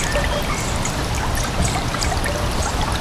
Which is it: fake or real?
real